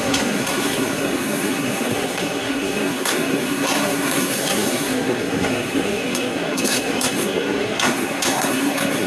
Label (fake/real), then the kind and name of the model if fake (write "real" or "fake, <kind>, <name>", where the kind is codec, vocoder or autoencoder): fake, codec, SNAC